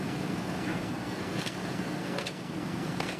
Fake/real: fake